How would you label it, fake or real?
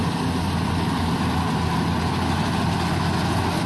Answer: real